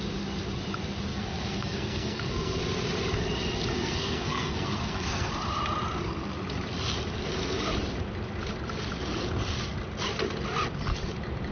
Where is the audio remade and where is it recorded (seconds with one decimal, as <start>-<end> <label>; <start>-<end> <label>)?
0.0-1.1 recorded; 1.1-2.6 remade; 2.6-3.7 recorded; 3.7-5.3 remade; 5.3-11.5 recorded